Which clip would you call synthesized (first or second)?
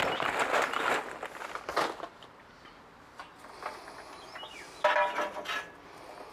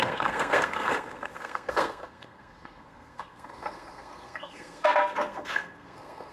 second